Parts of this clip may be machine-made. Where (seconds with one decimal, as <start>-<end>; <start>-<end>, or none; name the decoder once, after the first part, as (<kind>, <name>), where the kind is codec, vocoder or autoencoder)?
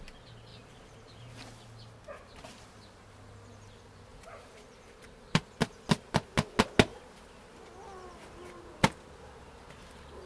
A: 0.5-1.4 (vocoder, BigVGAN v2); 4.1-5.5